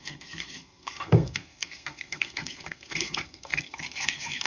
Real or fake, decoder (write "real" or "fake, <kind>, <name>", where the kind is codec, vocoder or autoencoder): fake, codec, SNAC